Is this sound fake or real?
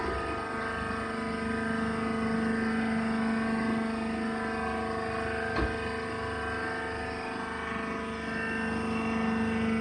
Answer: real